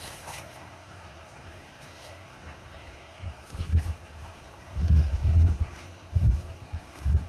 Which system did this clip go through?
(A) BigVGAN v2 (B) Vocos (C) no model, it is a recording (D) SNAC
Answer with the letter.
D